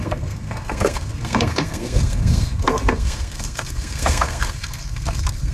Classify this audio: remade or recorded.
remade